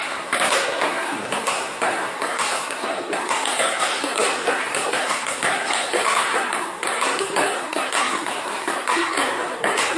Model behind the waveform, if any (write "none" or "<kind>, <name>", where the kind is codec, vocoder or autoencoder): codec, SNAC